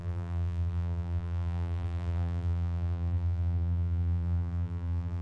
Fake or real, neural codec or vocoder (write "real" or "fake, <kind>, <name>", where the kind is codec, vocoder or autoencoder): fake, vocoder, BigVGAN v2